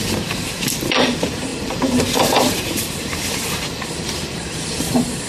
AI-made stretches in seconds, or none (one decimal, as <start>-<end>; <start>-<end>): 0.0-5.3